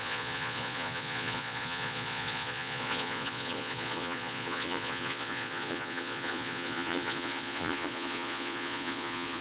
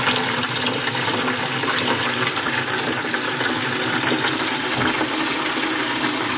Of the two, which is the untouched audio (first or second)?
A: second